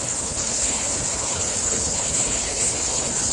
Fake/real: fake